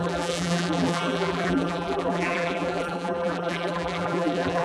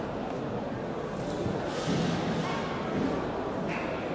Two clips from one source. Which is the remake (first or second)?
first